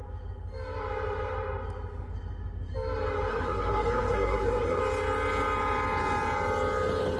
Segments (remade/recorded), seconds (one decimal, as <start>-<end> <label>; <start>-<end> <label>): 0.0-3.3 recorded; 3.3-4.8 remade; 4.8-7.2 recorded